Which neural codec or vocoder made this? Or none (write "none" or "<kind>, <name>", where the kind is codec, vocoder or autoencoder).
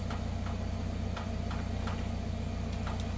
none